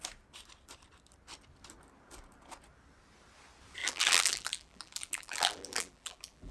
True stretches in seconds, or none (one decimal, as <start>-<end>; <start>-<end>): 0.0-3.8